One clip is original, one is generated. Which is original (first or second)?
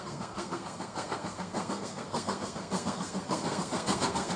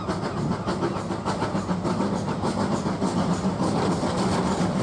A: second